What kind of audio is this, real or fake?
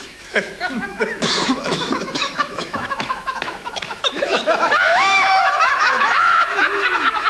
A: fake